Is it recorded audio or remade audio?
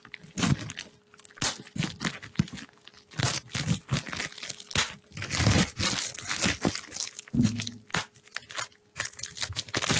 recorded